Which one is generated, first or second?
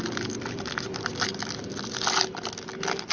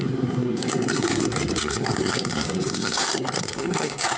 second